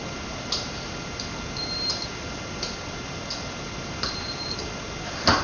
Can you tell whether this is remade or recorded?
recorded